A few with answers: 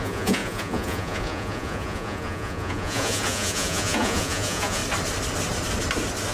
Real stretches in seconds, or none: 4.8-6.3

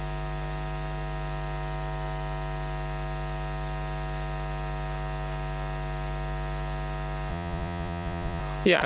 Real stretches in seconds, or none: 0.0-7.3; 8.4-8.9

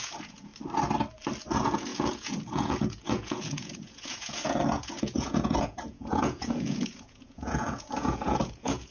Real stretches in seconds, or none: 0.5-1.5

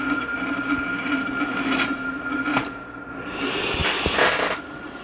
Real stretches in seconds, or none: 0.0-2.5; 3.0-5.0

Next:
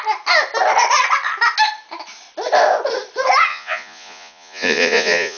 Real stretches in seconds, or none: 0.0-3.5